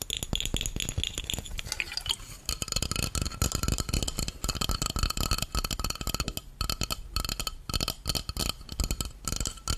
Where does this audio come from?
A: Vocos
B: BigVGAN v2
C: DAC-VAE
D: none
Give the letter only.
D